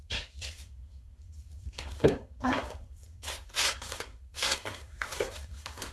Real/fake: fake